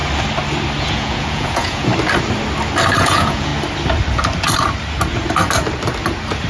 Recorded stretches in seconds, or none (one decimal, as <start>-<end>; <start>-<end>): 0.0-0.8; 1.9-3.0; 3.5-6.5